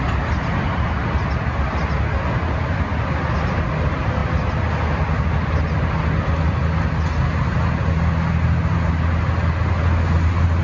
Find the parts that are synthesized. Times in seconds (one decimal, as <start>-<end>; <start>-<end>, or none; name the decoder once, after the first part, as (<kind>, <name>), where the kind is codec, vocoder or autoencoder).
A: none